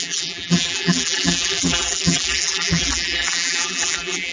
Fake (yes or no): yes